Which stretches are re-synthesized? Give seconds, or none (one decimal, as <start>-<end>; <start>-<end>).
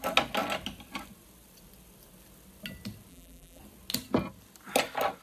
3.1-3.6